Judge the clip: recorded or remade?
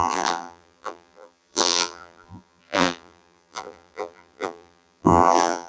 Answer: remade